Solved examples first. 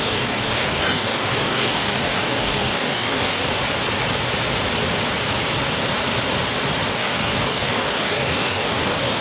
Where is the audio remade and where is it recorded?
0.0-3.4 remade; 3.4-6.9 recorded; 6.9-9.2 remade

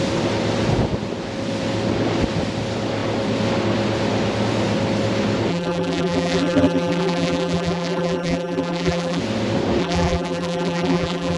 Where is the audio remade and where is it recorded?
0.0-5.5 recorded; 5.5-9.2 remade; 9.2-9.8 recorded; 9.8-11.4 remade

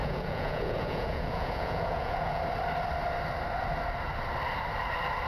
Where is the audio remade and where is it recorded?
0.0-2.4 remade; 2.4-5.3 recorded

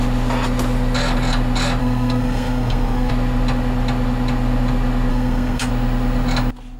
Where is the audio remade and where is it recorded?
0.0-1.8 recorded; 1.8-3.1 remade; 3.1-5.1 recorded; 5.1-5.7 remade; 5.7-6.8 recorded

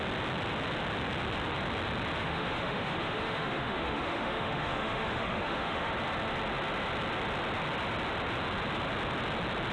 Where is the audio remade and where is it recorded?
0.0-2.2 recorded; 2.2-5.9 remade; 5.9-9.7 recorded

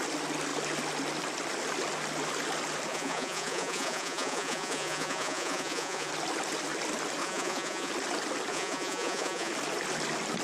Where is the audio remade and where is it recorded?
0.0-2.9 recorded; 2.9-6.1 remade; 6.1-7.2 recorded; 7.2-7.9 remade; 7.9-8.5 recorded; 8.5-9.5 remade; 9.5-10.4 recorded

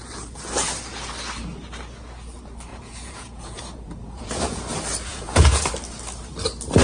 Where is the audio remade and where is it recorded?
0.0-2.7 recorded; 2.7-4.6 remade; 4.6-5.1 recorded; 5.1-5.7 remade; 5.7-6.8 recorded

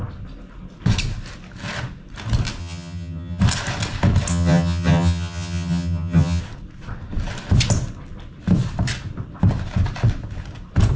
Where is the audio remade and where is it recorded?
0.0-2.6 recorded; 2.6-3.4 remade; 3.4-4.3 recorded; 4.3-6.4 remade; 6.4-11.0 recorded